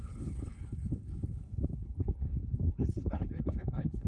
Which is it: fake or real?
fake